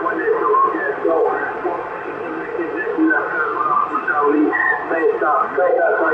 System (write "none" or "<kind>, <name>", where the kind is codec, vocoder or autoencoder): none